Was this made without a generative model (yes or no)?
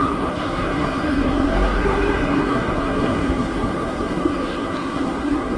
no